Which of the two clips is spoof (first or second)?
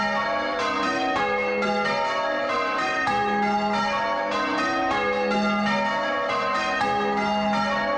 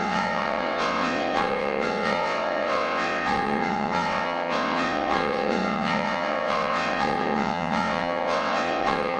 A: second